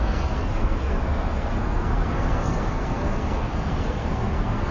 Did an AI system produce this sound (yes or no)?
yes